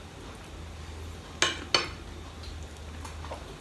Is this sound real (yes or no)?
yes